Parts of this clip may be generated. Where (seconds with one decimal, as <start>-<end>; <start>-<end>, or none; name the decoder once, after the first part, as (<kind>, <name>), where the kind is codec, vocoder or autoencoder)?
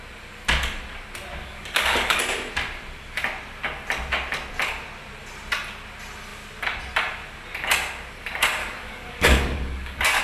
1.4-2.2 (codec, DAC); 8.6-10.2